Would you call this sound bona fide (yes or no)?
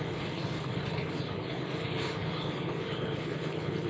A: no